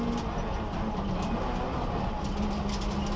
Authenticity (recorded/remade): recorded